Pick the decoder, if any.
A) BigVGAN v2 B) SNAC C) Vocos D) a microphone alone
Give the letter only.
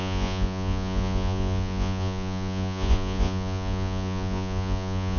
C